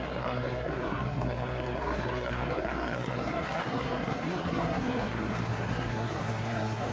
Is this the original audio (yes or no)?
no